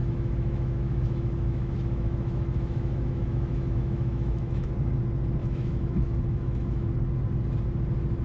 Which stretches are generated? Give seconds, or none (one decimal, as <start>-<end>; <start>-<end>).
0.0-4.7; 5.4-6.9